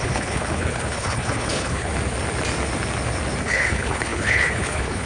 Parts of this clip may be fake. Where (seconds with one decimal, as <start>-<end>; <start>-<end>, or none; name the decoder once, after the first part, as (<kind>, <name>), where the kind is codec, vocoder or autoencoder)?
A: 0.0-1.9 (codec, HILCodec); 3.4-5.1